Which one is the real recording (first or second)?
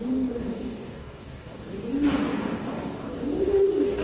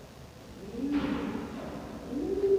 second